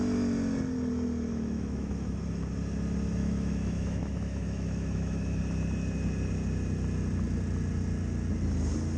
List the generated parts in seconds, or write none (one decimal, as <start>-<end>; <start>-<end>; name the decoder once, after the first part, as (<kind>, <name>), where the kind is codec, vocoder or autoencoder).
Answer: 1.3-2.2 (autoencoder, DAC-VAE); 3.2-5.4